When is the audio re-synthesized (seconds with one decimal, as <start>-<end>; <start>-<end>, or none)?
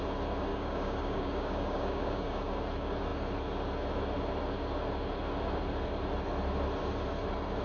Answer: 0.5-2.4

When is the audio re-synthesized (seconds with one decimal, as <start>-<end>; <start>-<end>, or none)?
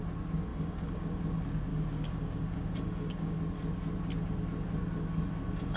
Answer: 0.5-1.2; 1.7-3.4